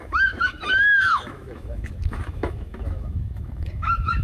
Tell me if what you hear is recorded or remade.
remade